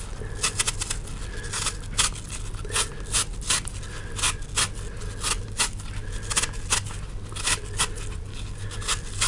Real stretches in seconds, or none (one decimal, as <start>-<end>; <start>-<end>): 0.0-8.3; 8.8-9.3